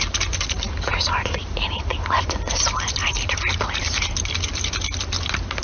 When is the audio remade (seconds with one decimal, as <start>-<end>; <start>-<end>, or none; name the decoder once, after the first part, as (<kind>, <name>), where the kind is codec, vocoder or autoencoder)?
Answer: 0.9-4.3 (vocoder, BigVGAN v2)